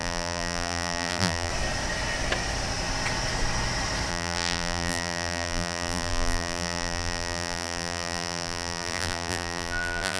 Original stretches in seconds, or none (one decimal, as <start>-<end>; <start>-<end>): 1.5-4.1